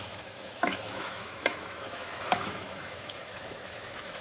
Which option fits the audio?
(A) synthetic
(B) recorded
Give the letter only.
A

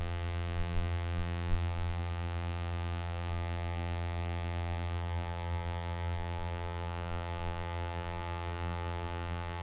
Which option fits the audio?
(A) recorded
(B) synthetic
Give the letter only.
B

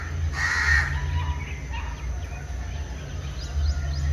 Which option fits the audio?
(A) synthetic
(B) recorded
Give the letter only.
B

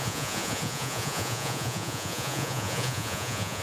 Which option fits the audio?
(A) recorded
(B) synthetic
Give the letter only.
B